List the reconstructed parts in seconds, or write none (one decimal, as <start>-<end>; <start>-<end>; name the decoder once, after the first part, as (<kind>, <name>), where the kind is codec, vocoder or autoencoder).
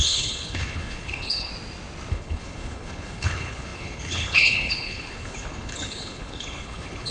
0.0-1.5 (codec, HILCodec); 2.1-7.1